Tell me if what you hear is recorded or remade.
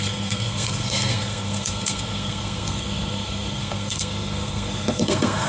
remade